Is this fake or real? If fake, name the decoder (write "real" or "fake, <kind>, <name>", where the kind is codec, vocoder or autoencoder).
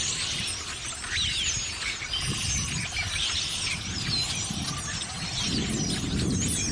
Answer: real